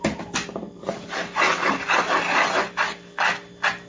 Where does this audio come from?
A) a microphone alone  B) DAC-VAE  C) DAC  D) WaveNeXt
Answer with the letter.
A